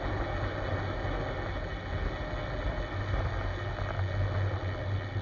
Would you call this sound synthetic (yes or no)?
no